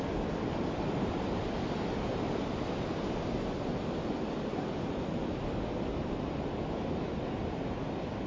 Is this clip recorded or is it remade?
recorded